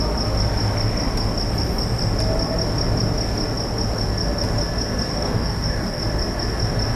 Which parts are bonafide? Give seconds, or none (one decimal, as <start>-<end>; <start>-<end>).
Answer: 0.0-5.1; 6.0-7.0